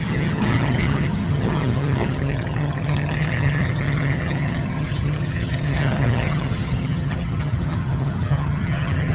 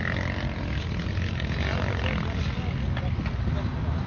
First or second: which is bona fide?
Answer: second